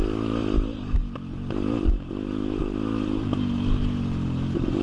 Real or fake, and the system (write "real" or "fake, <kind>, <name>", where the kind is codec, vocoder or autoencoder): real